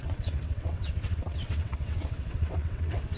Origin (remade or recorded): remade